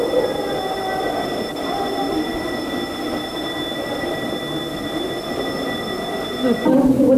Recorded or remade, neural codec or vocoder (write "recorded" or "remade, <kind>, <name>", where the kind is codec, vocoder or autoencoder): recorded